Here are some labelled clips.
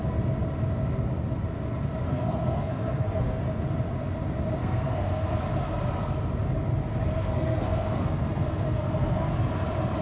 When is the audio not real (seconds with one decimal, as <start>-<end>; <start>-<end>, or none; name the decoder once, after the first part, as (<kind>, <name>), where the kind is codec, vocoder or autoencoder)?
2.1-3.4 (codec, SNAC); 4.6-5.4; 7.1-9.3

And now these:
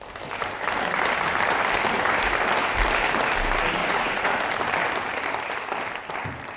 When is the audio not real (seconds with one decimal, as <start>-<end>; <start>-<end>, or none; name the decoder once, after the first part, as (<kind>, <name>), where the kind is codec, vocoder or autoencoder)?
3.8-4.4 (vocoder, Vocos)

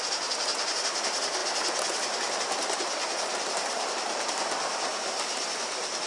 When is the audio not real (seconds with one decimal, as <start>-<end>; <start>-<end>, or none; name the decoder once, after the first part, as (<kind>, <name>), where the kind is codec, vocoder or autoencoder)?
none